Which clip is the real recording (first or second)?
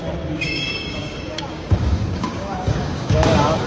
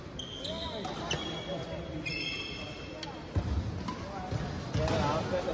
second